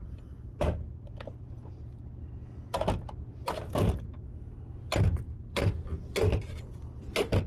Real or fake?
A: real